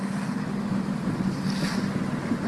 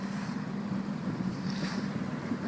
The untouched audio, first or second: first